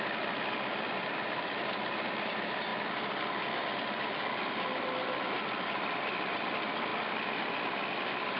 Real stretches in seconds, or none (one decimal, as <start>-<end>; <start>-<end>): 0.0-8.4